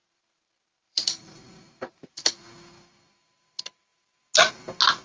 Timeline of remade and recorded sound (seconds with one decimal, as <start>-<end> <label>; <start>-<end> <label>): 0.0-2.4 remade; 2.4-5.0 recorded